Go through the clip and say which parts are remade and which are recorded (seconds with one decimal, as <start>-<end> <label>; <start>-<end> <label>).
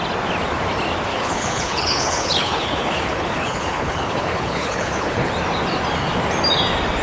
0.0-1.1 recorded; 1.1-5.3 remade; 5.3-7.0 recorded